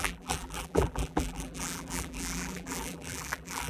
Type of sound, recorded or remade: remade